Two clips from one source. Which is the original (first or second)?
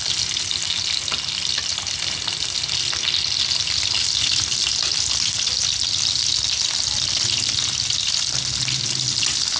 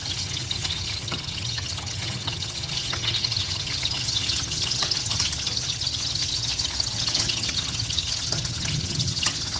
first